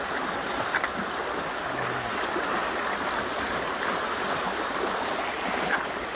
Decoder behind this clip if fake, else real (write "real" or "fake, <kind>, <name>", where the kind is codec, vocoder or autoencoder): real